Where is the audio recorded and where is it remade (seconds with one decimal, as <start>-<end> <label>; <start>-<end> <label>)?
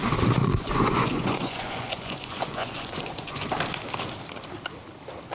0.0-0.4 recorded; 0.4-3.5 remade; 3.5-5.3 recorded